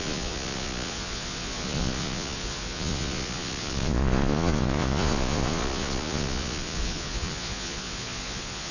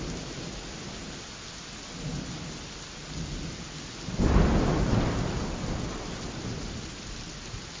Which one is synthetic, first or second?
first